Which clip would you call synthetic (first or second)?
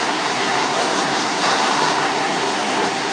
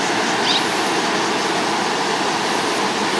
first